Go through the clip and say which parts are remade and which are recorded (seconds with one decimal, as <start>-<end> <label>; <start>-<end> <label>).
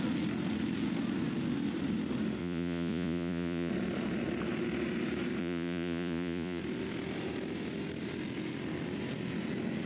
0.0-2.4 recorded; 2.4-3.7 remade; 3.7-5.4 recorded; 5.4-6.6 remade; 6.6-9.9 recorded